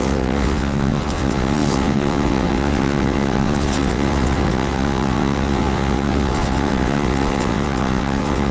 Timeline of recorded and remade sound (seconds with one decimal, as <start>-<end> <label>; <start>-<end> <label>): 0.0-8.5 remade